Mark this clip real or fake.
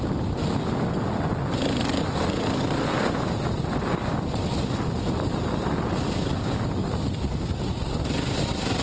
real